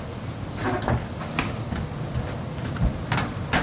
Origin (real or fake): real